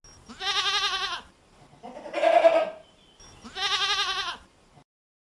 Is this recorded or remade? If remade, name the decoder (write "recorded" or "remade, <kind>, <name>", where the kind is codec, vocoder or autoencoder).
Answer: recorded